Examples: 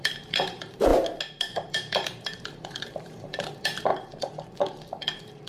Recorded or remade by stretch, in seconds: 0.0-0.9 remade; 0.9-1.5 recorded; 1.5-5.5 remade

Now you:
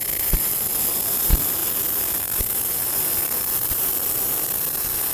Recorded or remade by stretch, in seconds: 0.0-5.1 recorded

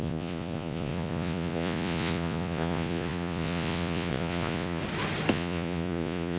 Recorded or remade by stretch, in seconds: 0.0-4.8 remade; 4.8-5.3 recorded; 5.3-6.4 remade

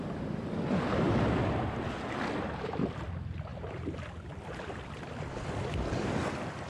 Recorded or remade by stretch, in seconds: 0.0-6.7 recorded

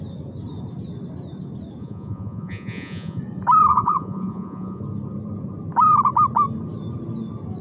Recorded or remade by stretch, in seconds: 0.0-1.8 recorded; 1.8-3.2 remade; 3.2-3.7 recorded; 3.7-4.8 remade; 4.8-7.6 recorded